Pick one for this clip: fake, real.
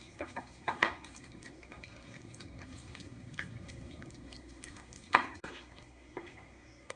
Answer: fake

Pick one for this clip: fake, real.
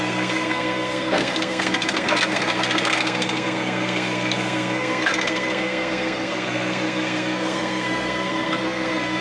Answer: fake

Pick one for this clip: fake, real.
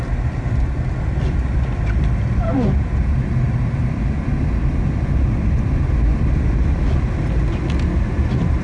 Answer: real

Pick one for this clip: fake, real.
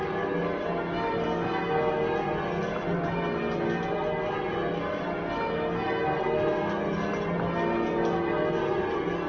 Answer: real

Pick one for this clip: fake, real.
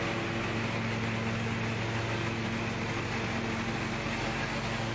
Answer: real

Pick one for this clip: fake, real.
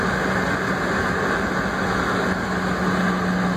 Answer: real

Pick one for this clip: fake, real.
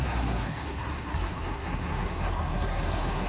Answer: fake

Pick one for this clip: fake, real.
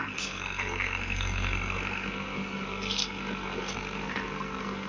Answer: fake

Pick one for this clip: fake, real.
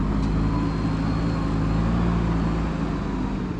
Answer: real